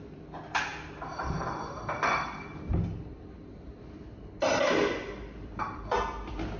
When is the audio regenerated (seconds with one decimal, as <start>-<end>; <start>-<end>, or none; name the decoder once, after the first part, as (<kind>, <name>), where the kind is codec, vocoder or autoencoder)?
none